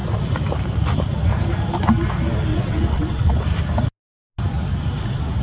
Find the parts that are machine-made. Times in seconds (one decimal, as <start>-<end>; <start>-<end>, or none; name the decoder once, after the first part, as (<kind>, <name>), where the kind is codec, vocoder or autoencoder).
2.5-3.3 (vocoder, WaveNeXt)